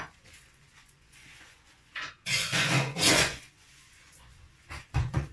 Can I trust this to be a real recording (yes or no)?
no